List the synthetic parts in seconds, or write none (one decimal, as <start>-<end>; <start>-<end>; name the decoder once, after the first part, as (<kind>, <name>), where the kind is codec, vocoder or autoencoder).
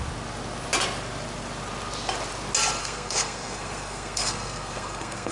2.8-5.3 (codec, SNAC)